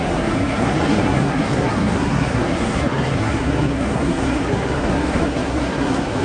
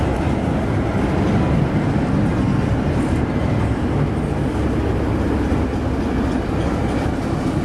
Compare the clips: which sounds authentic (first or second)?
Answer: second